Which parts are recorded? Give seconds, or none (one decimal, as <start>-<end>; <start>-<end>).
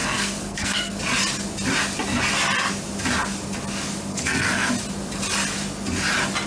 1.0-4.1; 4.7-6.5